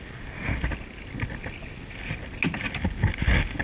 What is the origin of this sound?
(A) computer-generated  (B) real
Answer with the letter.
B